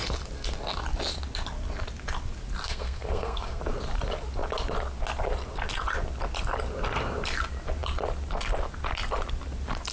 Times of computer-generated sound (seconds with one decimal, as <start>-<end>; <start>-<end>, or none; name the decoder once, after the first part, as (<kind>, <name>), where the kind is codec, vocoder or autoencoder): 2.6-3.6 (codec, SNAC)